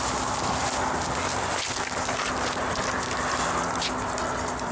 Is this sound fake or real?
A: real